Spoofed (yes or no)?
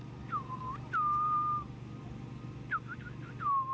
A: no